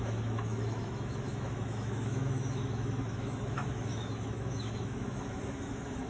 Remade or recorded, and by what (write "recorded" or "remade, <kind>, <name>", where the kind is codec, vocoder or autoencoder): remade, autoencoder, DAC-VAE